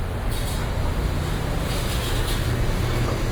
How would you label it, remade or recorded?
recorded